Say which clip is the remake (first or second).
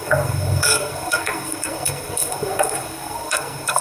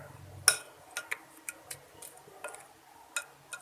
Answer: first